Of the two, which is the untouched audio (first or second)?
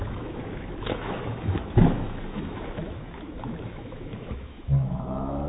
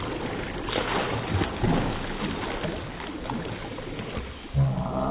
second